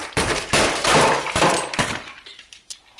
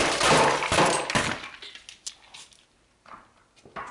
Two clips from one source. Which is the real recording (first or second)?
second